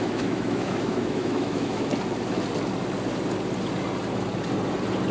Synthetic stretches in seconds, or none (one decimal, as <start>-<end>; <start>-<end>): 0.0-1.9